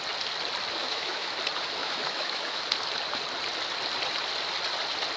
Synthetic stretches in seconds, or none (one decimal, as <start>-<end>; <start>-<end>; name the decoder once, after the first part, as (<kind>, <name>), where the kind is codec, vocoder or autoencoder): 0.8-1.3 (autoencoder, DAC-VAE); 1.8-2.6